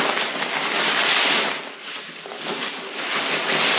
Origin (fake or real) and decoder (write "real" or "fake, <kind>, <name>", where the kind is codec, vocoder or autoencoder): real